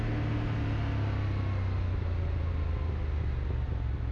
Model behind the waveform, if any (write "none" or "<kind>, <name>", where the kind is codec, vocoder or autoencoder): none